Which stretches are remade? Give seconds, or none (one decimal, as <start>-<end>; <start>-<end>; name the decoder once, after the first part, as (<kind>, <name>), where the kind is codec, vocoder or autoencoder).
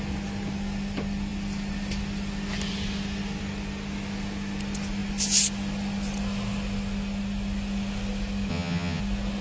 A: 8.5-9.0 (vocoder, HiFi-GAN)